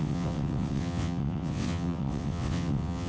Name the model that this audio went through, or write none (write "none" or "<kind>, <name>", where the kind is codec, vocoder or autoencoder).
vocoder, WaveNeXt